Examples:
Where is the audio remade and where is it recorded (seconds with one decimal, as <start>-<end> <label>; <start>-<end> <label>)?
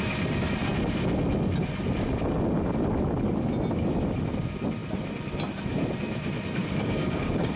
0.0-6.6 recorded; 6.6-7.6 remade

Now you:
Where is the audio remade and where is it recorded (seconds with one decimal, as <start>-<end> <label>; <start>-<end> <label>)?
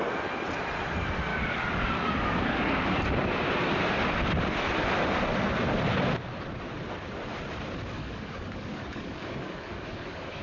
0.0-1.3 recorded; 1.3-3.0 remade; 3.0-8.0 recorded; 8.0-10.4 remade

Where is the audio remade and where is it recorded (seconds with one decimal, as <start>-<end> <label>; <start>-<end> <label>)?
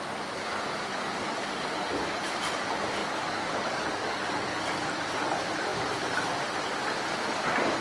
0.0-0.9 recorded; 0.9-1.7 remade; 1.7-3.0 recorded; 3.0-4.8 remade; 4.8-7.8 recorded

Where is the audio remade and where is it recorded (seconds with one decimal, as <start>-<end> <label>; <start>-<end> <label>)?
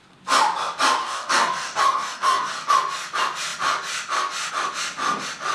0.0-1.0 recorded; 1.0-2.7 remade; 2.7-5.5 recorded